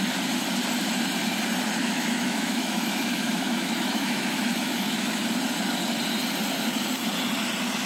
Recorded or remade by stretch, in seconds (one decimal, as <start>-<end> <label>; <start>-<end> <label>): 0.0-1.8 recorded; 1.8-5.2 remade; 5.2-7.9 recorded